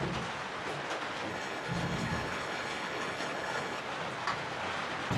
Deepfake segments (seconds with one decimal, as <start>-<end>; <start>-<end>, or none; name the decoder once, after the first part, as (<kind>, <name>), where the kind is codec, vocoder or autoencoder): 1.3-3.8 (codec, HILCodec)